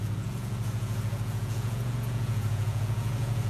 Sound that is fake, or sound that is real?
fake